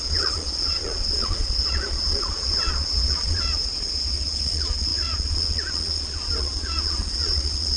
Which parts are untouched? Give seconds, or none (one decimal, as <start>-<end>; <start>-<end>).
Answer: none